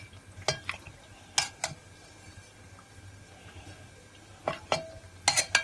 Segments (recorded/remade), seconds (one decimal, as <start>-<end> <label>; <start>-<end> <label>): 0.0-5.6 recorded